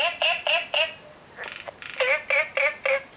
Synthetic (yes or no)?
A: no